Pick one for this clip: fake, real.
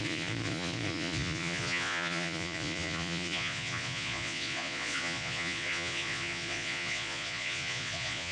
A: fake